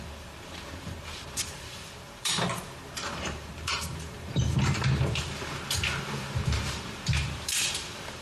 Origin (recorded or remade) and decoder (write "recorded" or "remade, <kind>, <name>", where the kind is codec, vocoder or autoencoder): remade, vocoder, BigVGAN v2